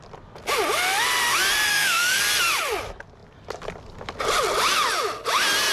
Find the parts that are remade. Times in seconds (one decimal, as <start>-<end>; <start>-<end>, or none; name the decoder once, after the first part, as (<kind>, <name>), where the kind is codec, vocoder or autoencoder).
1.7-2.2 (autoencoder, DAC-VAE)